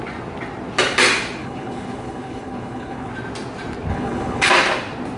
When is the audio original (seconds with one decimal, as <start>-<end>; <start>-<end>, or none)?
0.0-1.4; 3.1-3.9; 4.5-5.2